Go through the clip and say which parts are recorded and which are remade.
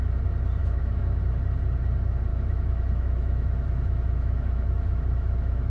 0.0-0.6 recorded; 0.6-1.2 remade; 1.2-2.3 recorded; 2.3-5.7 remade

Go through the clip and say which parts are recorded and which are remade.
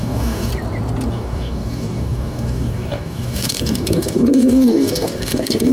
0.0-0.5 remade; 0.5-1.1 recorded; 1.1-5.7 remade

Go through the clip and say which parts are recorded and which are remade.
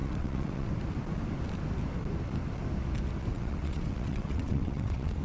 0.0-0.7 remade; 0.7-3.3 recorded; 3.3-5.2 remade